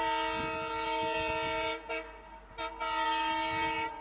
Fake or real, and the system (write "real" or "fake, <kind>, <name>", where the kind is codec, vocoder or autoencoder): real